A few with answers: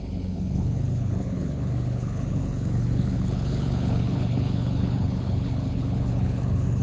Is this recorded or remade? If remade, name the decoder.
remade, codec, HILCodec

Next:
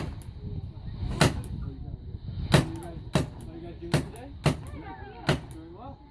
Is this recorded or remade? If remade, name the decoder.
recorded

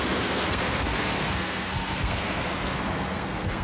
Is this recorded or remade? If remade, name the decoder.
remade, codec, SNAC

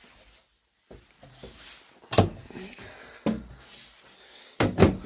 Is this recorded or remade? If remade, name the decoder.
recorded